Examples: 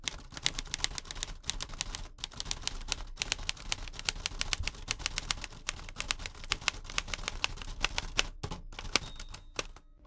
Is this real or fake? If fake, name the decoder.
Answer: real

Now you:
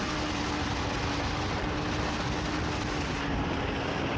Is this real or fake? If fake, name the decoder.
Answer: real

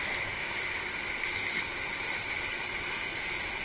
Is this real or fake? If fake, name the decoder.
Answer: real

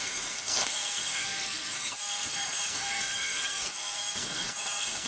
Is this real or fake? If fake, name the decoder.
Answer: fake, codec, SNAC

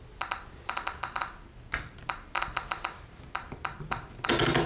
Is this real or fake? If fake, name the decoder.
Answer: real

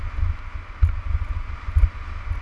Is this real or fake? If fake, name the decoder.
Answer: real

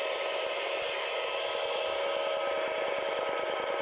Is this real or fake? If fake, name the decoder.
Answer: real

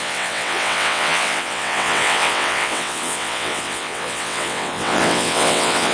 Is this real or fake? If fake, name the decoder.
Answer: fake, vocoder, WaveNeXt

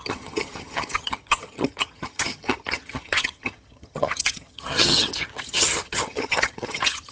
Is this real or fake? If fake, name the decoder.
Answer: fake, vocoder, HiFi-GAN